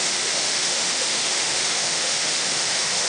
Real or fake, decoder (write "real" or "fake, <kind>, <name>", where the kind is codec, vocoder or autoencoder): fake, autoencoder, DAC-VAE